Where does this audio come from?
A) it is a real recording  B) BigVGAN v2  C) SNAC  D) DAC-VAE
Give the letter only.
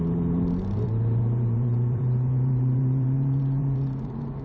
B